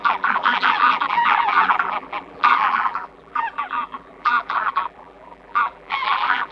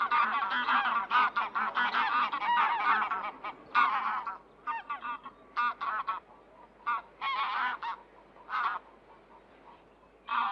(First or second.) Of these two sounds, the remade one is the first